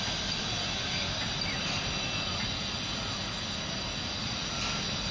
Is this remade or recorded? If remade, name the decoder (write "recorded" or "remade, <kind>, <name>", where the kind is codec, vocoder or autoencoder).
recorded